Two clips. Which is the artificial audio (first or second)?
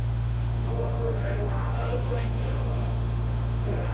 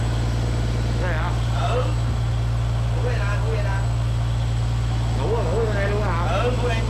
first